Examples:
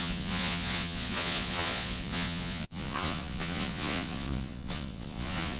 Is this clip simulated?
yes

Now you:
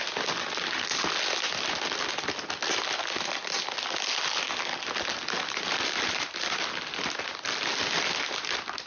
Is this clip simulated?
no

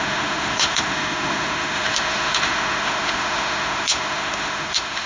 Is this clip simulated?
yes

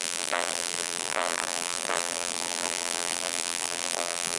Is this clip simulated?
yes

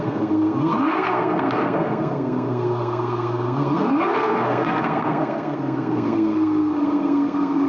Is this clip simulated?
yes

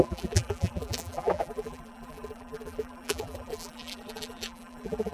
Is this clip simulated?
yes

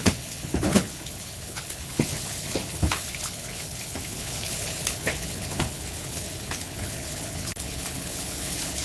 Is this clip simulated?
yes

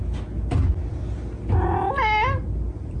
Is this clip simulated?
no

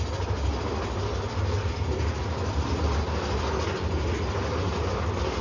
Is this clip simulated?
no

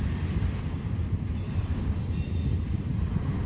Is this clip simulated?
no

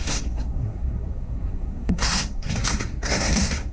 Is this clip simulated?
yes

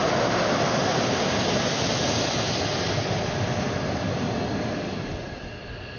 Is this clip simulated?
no